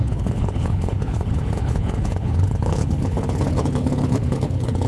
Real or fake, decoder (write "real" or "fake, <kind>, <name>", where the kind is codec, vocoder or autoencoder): fake, codec, HILCodec